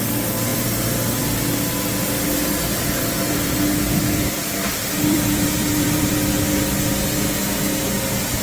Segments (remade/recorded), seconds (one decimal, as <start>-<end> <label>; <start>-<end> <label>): 0.0-1.9 recorded; 1.9-6.6 remade; 6.6-8.4 recorded